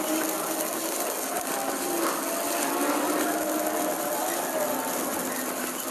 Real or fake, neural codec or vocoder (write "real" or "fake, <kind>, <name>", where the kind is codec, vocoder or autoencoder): real